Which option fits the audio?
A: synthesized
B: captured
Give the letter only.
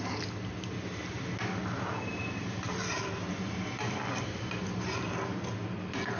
B